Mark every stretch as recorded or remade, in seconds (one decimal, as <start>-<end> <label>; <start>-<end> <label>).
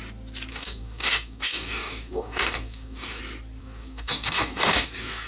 0.0-0.5 recorded; 0.5-3.2 remade; 3.2-3.6 recorded; 3.6-5.3 remade